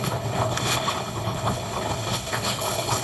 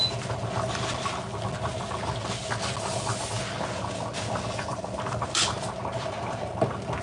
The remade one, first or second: first